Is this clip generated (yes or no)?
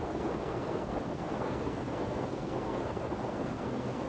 yes